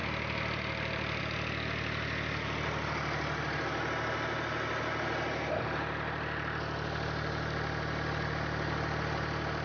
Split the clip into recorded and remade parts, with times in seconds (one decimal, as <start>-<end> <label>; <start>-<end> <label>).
0.0-9.6 recorded